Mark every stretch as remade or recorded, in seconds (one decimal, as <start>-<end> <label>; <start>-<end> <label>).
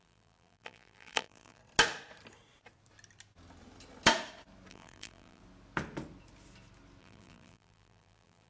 0.0-1.6 remade; 1.6-4.7 recorded; 4.7-5.4 remade; 5.4-7.0 recorded; 7.0-8.5 remade